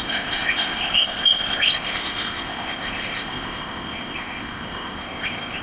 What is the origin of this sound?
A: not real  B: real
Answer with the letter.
A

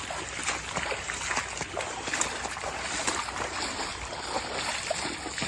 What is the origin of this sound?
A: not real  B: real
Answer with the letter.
B